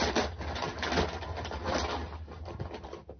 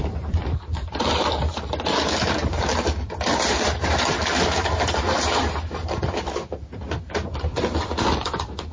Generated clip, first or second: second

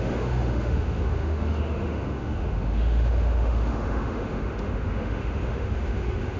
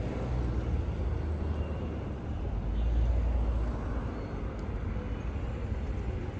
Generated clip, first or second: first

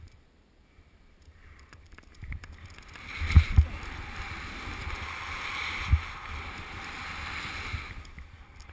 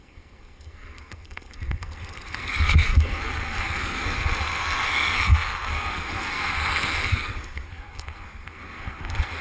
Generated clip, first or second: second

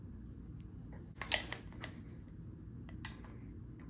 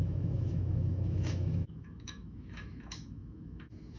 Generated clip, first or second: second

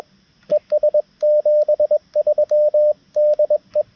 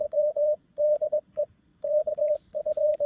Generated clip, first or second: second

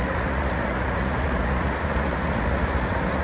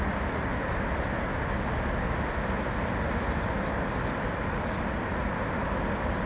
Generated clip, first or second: first